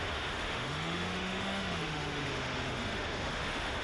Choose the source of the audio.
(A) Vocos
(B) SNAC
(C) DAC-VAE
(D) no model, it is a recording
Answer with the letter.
C